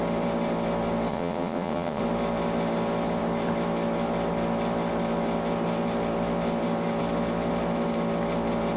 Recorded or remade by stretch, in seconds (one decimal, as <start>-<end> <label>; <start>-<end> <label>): 0.0-1.1 recorded; 1.1-2.0 remade; 2.0-8.8 recorded